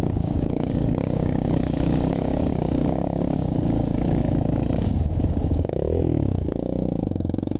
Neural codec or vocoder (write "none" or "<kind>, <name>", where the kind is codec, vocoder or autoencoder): codec, DAC